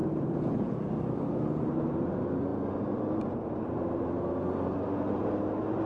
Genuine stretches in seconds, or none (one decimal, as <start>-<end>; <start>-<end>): 0.7-5.9